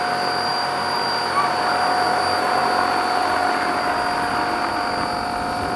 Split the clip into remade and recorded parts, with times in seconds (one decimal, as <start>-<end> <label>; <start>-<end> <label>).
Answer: 0.0-5.8 recorded